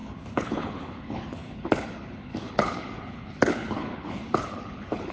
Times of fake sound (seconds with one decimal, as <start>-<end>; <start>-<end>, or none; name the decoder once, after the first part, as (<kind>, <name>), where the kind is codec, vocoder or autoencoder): 0.0-5.1 (codec, HILCodec)